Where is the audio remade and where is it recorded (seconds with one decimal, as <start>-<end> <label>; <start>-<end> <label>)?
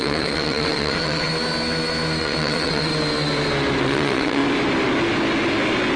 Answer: 0.0-1.3 remade; 1.3-2.2 recorded; 2.2-2.9 remade; 2.9-3.8 recorded; 3.8-4.4 remade; 4.4-6.0 recorded